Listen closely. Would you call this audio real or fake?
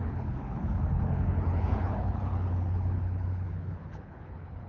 fake